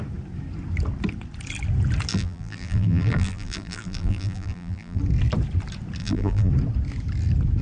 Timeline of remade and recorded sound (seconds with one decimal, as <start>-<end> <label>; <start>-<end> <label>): 0.0-2.1 recorded; 2.1-5.0 remade; 5.0-6.0 recorded; 6.0-6.5 remade; 6.5-7.6 recorded